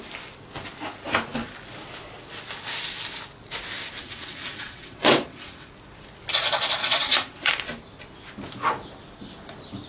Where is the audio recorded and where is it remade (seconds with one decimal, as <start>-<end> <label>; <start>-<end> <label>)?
0.0-4.0 recorded; 4.0-5.7 remade; 5.7-6.8 recorded; 6.8-7.5 remade; 7.5-9.9 recorded